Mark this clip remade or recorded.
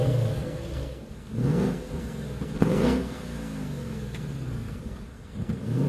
remade